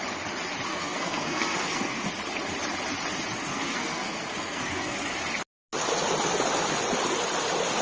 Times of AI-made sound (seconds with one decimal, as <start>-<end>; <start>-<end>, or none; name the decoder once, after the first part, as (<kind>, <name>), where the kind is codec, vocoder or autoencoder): 0.7-2.0 (codec, SNAC); 3.5-5.2